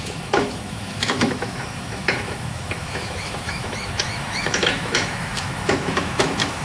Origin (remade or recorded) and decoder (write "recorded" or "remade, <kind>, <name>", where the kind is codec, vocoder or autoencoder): remade, autoencoder, DAC-VAE